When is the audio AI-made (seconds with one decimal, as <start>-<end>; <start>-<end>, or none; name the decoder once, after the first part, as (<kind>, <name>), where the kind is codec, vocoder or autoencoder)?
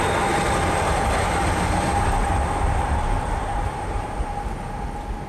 2.3-4.1 (vocoder, BigVGAN v2)